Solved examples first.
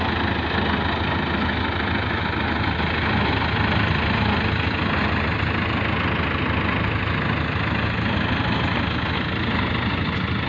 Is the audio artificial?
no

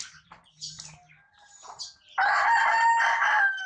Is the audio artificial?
no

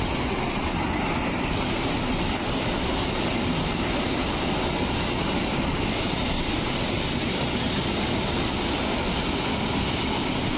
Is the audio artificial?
no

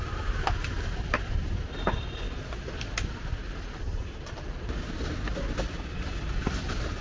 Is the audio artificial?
no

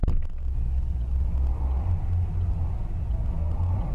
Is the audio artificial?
no